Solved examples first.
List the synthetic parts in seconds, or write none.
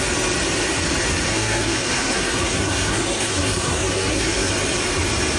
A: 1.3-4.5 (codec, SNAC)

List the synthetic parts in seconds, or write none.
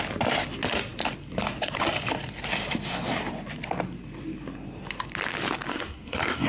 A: 5.7-6.5 (codec, SNAC)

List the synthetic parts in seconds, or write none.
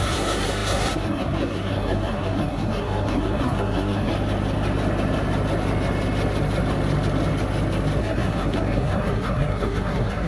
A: 0.0-4.1 (codec, SNAC); 8.0-10.3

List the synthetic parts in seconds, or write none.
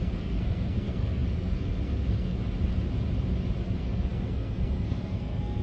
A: 0.0-2.4 (codec, SNAC); 3.6-5.6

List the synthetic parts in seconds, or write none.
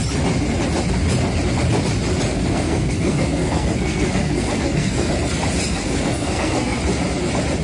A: 2.3-5.1 (codec, SNAC); 5.7-6.8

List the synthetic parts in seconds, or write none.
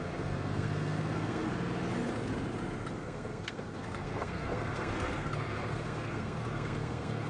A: 0.0-1.5 (codec, SNAC); 2.9-7.3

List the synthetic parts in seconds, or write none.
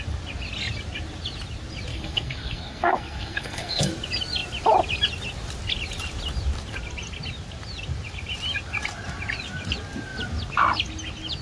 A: 1.9-3.9 (codec, SNAC)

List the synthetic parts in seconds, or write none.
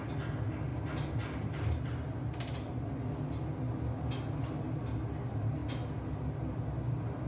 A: none